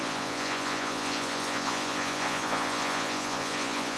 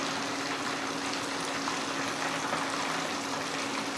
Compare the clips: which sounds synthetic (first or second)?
first